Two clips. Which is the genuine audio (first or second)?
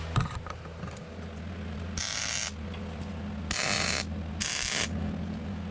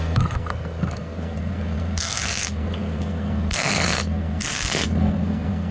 first